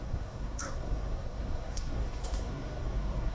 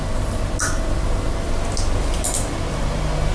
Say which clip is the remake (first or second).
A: first